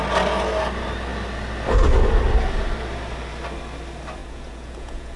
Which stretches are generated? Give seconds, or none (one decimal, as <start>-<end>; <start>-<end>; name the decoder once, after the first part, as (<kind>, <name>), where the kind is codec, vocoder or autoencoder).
4.2-5.2 (vocoder, Vocos)